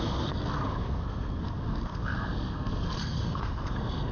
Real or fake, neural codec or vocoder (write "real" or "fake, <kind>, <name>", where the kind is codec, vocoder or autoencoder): fake, codec, SNAC